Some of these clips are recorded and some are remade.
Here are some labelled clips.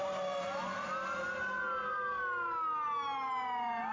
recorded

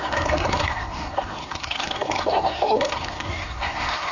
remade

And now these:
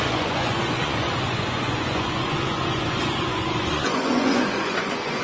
remade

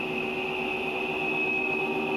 recorded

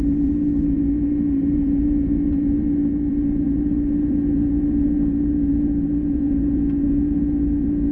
remade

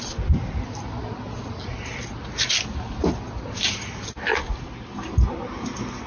recorded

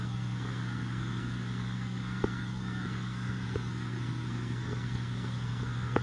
remade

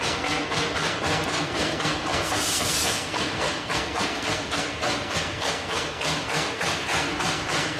remade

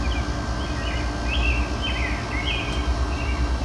recorded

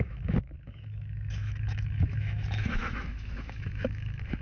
remade